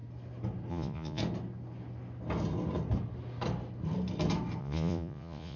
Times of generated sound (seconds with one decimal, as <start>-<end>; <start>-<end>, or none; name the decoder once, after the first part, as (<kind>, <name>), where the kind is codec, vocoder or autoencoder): 0.7-1.2 (vocoder, Vocos); 4.6-5.6